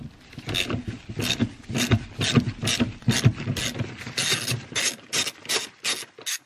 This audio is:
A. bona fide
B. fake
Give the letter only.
A